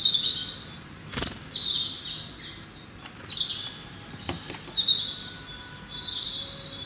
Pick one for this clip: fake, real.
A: real